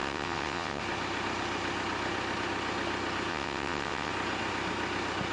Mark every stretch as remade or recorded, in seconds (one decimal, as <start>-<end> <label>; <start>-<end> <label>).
0.0-0.8 remade; 0.8-3.3 recorded; 3.3-4.1 remade; 4.1-5.3 recorded